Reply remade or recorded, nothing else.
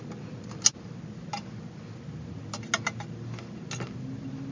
recorded